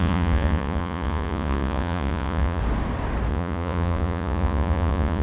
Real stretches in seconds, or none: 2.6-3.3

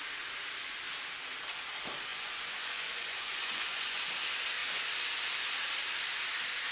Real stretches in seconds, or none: 0.0-2.1; 4.0-6.7

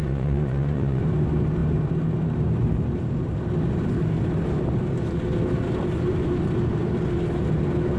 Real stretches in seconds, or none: 1.0-8.0

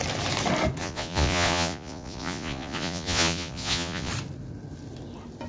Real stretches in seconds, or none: 0.0-0.8; 4.1-5.5

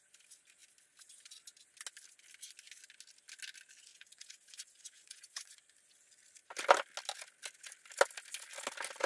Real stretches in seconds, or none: 0.0-3.9; 5.6-9.1

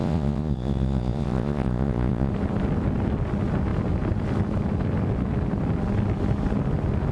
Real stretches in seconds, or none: 2.3-7.1